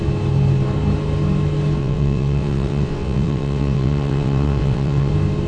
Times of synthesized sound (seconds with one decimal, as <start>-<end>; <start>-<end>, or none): 1.8-5.1